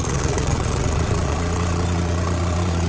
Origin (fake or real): fake